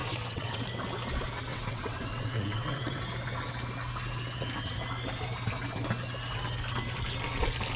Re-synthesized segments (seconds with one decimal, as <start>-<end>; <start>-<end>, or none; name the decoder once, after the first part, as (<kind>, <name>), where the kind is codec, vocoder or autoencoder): 0.0-0.6 (vocoder, WaveNeXt); 1.5-3.0